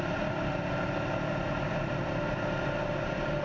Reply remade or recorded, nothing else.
recorded